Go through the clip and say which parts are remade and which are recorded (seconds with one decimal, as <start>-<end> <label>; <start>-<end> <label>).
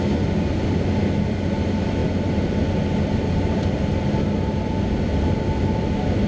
0.0-6.3 recorded